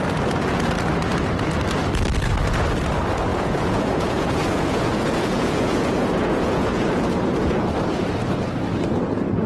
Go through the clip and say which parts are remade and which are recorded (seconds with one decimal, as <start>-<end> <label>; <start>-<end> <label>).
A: 0.0-3.3 recorded; 3.3-7.7 remade; 7.7-9.5 recorded